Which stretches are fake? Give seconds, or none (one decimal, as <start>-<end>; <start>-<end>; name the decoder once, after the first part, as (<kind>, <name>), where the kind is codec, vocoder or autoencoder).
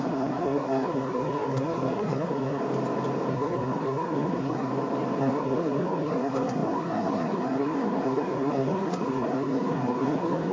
0.0-2.6 (codec, SNAC); 3.3-4.7; 5.2-10.5